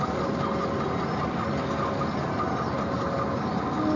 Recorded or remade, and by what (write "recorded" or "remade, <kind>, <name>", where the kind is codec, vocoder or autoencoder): recorded